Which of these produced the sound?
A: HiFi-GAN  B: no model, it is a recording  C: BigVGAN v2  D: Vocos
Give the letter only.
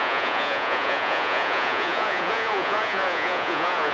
D